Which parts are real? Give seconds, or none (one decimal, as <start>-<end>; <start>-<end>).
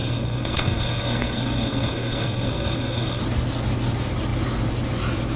3.2-5.4